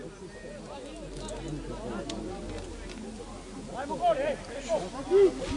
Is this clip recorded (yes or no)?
yes